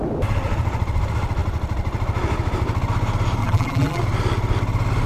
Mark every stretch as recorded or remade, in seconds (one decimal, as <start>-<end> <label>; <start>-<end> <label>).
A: 0.0-3.4 recorded; 3.4-4.0 remade; 4.0-5.1 recorded